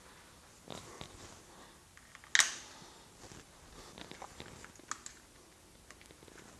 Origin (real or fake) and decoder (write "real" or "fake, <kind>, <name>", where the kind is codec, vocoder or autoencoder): real